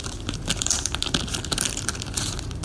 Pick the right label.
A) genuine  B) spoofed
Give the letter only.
B